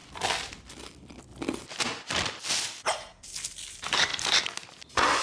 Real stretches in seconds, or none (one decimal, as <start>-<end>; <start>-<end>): 0.0-5.2